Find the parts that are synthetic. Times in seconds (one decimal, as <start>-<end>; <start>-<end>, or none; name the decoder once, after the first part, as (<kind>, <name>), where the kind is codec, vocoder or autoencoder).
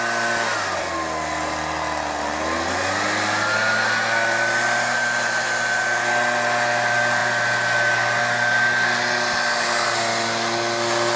none